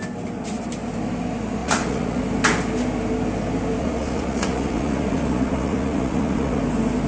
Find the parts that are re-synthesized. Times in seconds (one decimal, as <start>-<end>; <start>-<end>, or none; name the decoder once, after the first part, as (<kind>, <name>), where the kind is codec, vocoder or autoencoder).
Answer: 1.6-2.2 (vocoder, Vocos); 3.8-6.6